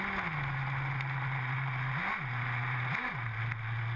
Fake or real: real